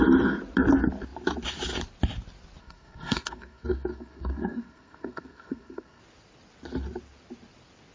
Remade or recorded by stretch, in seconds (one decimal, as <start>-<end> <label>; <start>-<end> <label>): 0.0-2.6 recorded; 2.6-6.0 remade; 6.0-7.9 recorded